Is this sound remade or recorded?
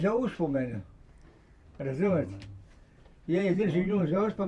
remade